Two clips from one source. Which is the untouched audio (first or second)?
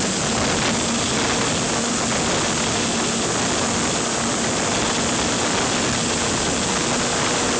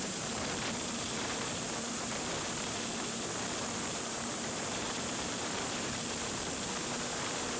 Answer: first